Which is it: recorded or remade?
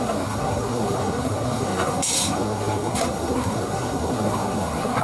remade